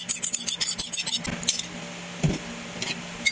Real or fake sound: real